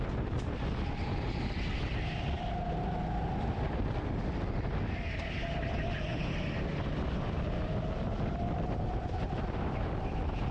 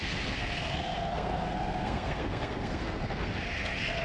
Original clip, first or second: first